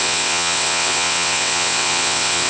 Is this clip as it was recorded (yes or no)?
no